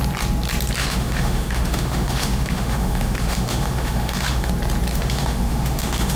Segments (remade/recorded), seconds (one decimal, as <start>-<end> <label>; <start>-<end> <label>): 0.0-0.8 recorded; 0.8-4.5 remade; 4.5-4.9 recorded; 4.9-6.2 remade